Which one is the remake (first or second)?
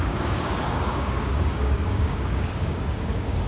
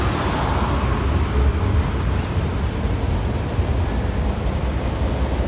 first